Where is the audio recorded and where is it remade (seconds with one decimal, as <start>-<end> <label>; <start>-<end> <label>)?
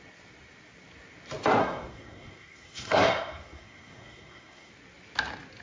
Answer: 0.0-1.6 recorded; 1.6-4.7 remade; 4.7-5.6 recorded